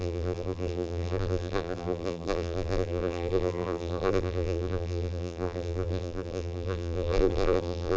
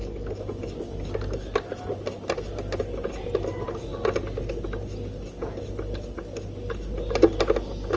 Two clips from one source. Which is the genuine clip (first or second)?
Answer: second